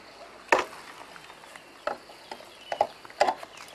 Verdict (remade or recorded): recorded